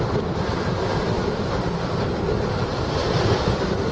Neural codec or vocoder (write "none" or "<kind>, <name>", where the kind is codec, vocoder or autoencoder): none